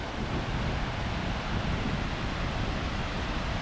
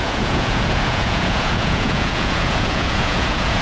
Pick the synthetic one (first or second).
second